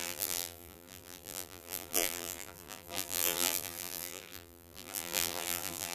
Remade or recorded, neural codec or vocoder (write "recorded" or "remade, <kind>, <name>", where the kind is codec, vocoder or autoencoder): remade, vocoder, BigVGAN v2